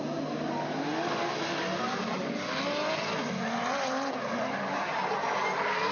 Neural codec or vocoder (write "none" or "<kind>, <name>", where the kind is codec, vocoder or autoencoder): none